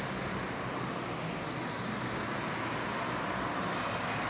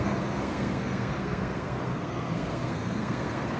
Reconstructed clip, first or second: second